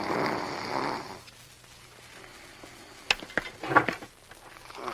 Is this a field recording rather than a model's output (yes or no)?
yes